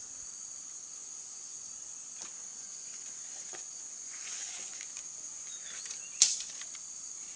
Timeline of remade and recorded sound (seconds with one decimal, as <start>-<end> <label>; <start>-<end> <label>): 0.0-1.0 recorded; 1.0-1.7 remade; 1.7-2.5 recorded; 2.5-5.7 remade; 5.7-7.4 recorded